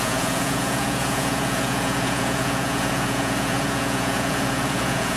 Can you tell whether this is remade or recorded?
remade